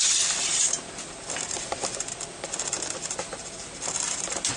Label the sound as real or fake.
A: fake